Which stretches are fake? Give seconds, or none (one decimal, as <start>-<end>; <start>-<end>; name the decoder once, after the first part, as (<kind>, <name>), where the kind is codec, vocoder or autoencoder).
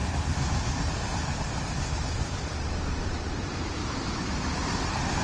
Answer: 0.0-3.1 (vocoder, BigVGAN v2); 3.8-5.2